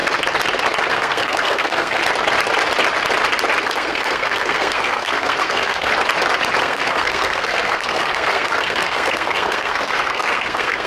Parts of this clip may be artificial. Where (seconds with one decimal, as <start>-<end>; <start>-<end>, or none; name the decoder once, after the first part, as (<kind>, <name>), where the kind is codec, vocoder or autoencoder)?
0.9-2.0 (codec, SNAC); 3.6-5.9; 6.6-10.9